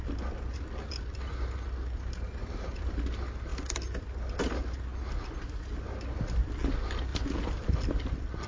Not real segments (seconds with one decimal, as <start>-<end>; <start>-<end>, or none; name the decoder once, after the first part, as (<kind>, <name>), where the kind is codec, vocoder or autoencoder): 2.4-3.0 (vocoder, BigVGAN v2); 7.1-7.8